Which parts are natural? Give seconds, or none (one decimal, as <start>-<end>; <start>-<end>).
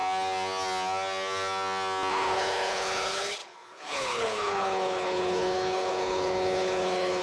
0.0-2.1